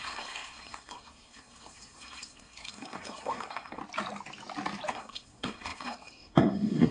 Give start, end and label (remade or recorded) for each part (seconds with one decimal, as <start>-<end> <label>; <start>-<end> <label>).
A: 0.0-3.8 remade; 3.8-4.9 recorded; 4.9-6.9 remade